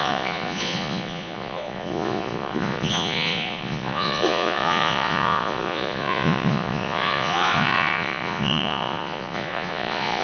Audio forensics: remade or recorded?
remade